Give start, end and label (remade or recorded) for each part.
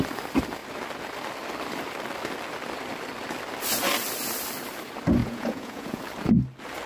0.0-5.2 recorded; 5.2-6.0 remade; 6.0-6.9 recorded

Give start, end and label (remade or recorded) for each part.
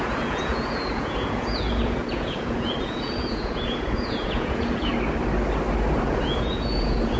0.0-4.9 remade; 4.9-5.9 recorded; 5.9-7.2 remade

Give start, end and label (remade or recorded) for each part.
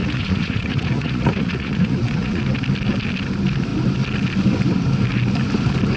0.0-2.4 remade; 2.4-6.0 recorded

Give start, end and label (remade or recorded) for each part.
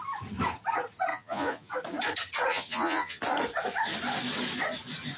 0.0-1.1 recorded; 1.1-1.7 remade; 1.7-2.5 recorded; 2.5-3.2 remade; 3.2-5.2 recorded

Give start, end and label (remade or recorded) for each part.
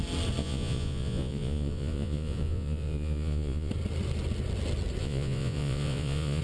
0.0-0.4 recorded; 0.4-3.7 remade; 3.7-5.0 recorded; 5.0-6.4 remade